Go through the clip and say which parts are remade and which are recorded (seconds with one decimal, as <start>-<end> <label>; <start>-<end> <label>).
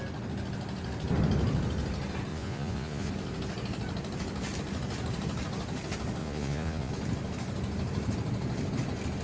0.0-2.3 recorded; 2.3-3.1 remade; 3.1-6.2 recorded; 6.2-6.9 remade; 6.9-9.2 recorded